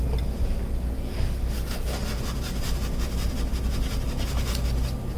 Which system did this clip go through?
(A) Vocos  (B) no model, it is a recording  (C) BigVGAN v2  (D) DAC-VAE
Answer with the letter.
B